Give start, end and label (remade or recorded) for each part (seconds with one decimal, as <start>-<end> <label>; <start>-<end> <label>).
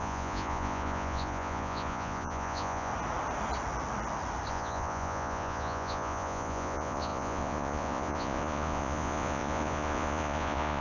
0.0-2.9 remade; 2.9-4.5 recorded; 4.5-10.8 remade